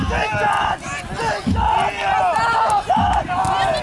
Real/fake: real